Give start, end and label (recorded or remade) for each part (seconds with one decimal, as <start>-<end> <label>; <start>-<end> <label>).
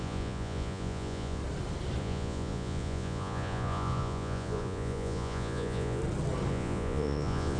0.0-1.4 remade; 1.4-2.0 recorded; 2.0-6.0 remade; 6.0-6.5 recorded; 6.5-7.6 remade